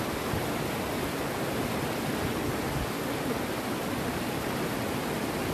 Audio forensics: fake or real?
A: real